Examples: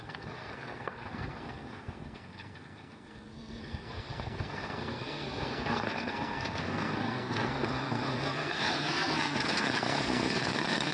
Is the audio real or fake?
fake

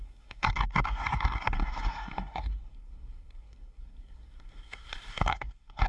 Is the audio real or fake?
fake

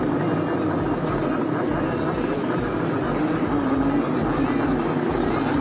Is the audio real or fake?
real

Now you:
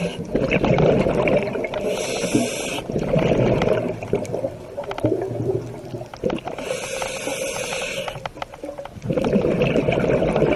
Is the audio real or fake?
real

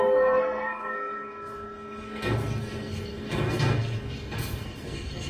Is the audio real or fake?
fake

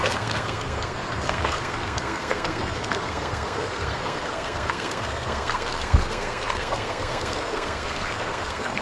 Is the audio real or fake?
fake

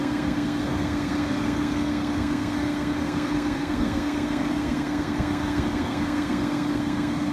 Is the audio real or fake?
fake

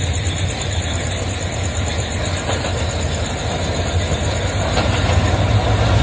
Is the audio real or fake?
real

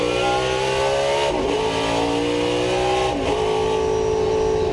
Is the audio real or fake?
real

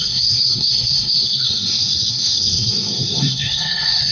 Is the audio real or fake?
fake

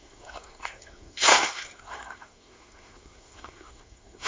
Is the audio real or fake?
fake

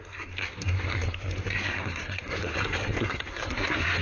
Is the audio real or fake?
fake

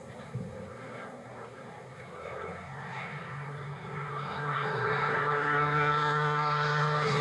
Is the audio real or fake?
fake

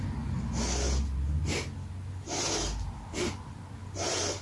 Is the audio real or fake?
real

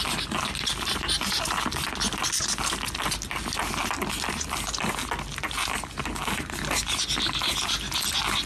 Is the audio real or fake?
real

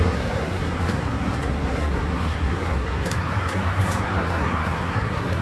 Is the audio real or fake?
fake